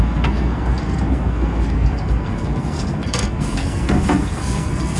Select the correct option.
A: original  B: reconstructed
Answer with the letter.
B